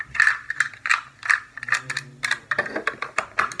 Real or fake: real